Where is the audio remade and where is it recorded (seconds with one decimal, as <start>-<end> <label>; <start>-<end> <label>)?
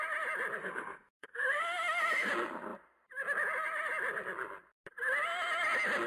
0.0-0.6 recorded; 0.6-2.3 remade; 2.3-6.1 recorded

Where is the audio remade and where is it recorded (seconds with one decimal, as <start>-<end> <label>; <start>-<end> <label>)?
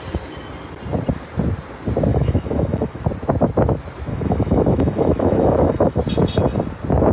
0.0-2.1 recorded; 2.1-3.0 remade; 3.0-4.1 recorded; 4.1-6.0 remade; 6.0-7.1 recorded